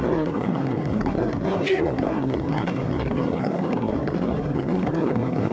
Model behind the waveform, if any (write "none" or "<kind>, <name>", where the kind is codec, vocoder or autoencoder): codec, SNAC